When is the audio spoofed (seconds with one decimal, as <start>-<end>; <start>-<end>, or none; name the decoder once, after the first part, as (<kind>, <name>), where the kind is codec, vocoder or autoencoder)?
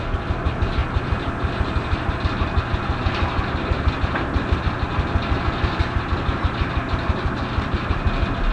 none